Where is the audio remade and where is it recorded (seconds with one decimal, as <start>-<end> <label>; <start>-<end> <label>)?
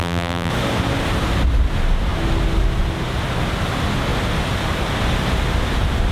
0.0-0.5 remade; 0.5-6.1 recorded